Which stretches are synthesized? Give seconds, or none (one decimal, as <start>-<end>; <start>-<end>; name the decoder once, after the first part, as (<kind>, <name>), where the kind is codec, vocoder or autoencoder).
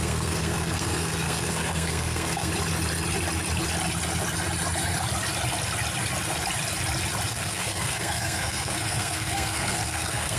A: 0.0-2.5 (codec, SNAC); 7.3-10.4